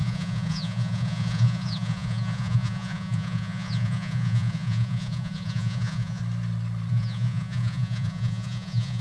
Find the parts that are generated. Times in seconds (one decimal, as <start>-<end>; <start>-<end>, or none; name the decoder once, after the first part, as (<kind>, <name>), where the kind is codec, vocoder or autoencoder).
0.0-6.2 (vocoder, Vocos); 6.9-9.0